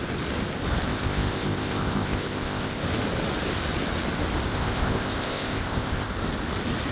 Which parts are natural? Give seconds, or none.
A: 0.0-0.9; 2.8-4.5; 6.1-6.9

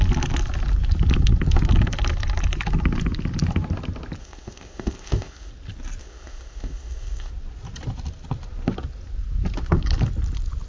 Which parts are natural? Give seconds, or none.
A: 0.0-4.2; 5.5-6.0; 7.3-10.7

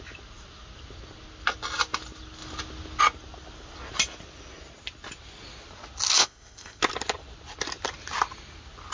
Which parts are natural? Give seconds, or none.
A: 0.0-6.2; 6.8-8.9

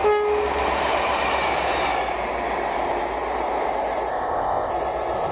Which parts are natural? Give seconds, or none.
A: 0.0-4.1; 4.7-5.3

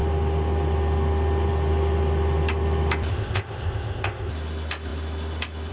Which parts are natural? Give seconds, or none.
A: 0.0-3.1; 4.3-5.7

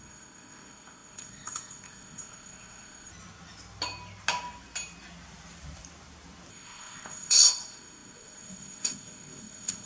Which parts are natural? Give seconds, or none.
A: 3.1-6.5